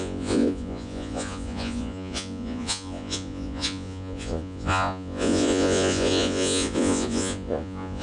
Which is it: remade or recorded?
remade